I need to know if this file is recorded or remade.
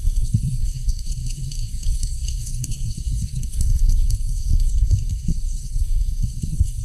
remade